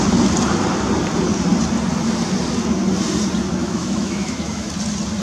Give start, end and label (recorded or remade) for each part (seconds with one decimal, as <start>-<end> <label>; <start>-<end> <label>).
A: 0.0-3.6 recorded; 3.6-4.7 remade; 4.7-5.2 recorded